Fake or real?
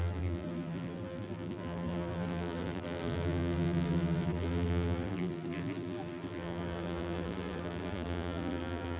fake